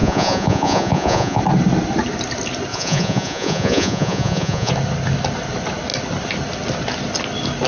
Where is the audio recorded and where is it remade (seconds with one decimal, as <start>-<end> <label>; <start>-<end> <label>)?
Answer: 0.0-1.4 remade; 1.4-2.7 recorded; 2.7-4.7 remade; 4.7-7.7 recorded